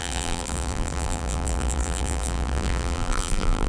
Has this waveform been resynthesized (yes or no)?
yes